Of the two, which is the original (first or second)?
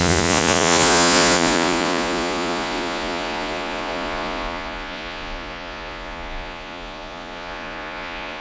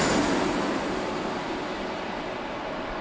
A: second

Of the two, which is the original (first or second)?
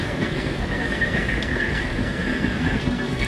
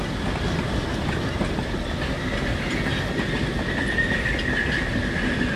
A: second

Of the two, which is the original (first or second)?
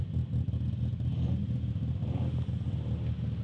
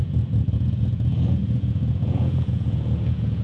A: first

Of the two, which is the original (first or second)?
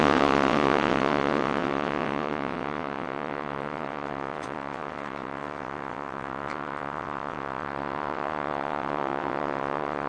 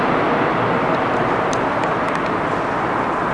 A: second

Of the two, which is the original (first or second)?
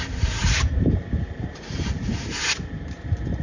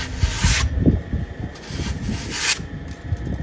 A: second